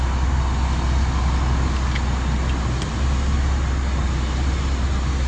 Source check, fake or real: real